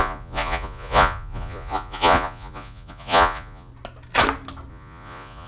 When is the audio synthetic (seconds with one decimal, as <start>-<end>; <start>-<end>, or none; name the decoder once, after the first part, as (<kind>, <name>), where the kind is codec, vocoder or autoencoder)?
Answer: 0.0-3.7 (vocoder, Vocos); 4.7-5.5